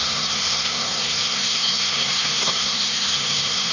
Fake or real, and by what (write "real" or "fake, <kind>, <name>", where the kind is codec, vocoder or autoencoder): fake, codec, SNAC